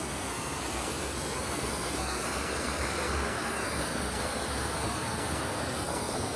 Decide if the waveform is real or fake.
fake